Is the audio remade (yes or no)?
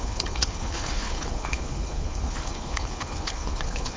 yes